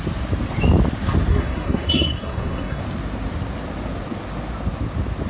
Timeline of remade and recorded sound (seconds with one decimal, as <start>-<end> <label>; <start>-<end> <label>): 0.0-1.3 recorded; 1.3-2.8 remade; 2.8-5.3 recorded